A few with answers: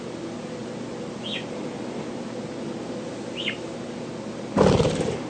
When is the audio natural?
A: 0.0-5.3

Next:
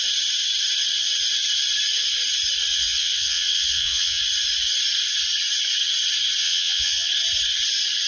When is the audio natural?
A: 0.0-2.7; 4.2-6.4; 7.1-8.1

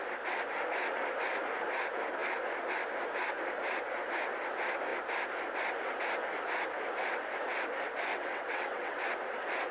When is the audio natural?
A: 0.0-8.1; 9.0-9.7

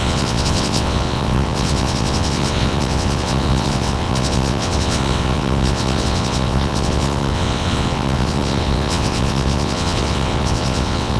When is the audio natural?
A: none

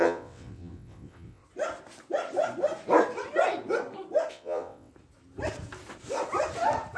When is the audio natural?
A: 1.4-4.3; 4.9-7.0

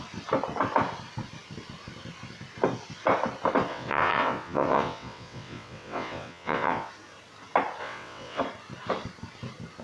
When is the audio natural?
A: 0.0-3.7; 6.9-7.8; 8.4-9.8

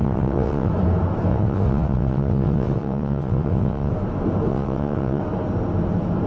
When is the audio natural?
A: 0.7-1.3; 3.9-4.5; 5.2-6.3

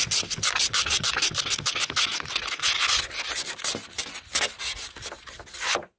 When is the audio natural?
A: 0.0-6.0